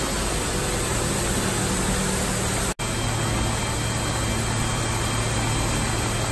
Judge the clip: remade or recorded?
recorded